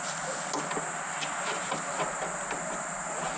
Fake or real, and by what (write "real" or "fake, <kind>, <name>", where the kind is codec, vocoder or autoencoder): real